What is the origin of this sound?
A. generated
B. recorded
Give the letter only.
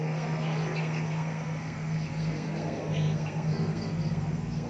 A